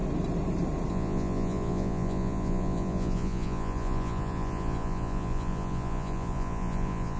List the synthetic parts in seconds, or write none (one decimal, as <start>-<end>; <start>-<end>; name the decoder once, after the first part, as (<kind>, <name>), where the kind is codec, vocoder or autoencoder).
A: 0.9-7.2 (vocoder, Vocos)